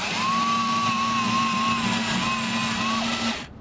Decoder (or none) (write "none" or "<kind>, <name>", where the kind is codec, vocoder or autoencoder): none